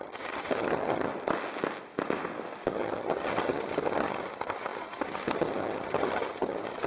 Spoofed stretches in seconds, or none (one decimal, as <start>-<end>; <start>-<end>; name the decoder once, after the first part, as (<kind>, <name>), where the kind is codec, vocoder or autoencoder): 0.0-1.1 (vocoder, HiFi-GAN); 2.7-6.9